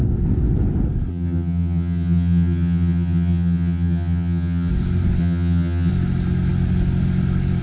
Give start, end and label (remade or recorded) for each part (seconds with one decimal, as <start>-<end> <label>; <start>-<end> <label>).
0.0-1.1 recorded; 1.1-4.7 remade; 4.7-5.2 recorded; 5.2-5.9 remade; 5.9-7.6 recorded